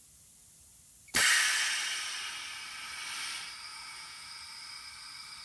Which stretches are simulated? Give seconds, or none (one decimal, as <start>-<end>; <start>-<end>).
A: 3.7-4.3